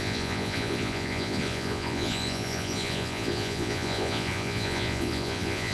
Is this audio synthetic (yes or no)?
yes